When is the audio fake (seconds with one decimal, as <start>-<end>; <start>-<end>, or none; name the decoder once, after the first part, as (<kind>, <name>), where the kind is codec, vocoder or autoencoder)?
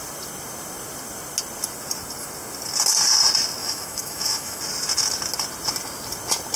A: 3.6-4.6 (autoencoder, DAC-VAE)